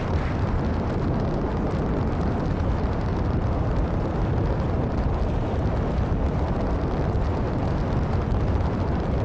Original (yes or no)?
yes